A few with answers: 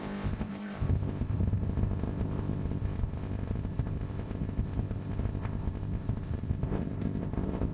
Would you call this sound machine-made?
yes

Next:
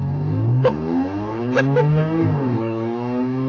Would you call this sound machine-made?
yes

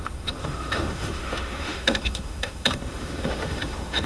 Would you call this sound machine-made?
yes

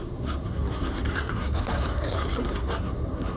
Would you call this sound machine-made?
yes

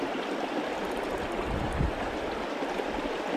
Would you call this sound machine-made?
no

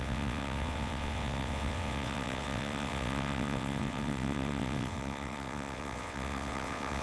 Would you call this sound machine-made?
yes